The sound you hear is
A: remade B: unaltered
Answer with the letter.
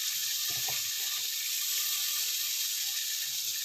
B